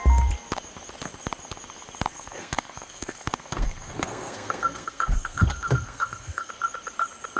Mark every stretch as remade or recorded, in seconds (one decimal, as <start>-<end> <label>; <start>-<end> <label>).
0.0-2.1 recorded; 2.1-6.5 remade; 6.5-7.4 recorded